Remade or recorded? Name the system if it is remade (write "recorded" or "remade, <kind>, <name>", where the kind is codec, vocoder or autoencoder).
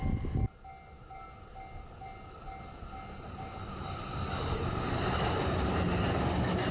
recorded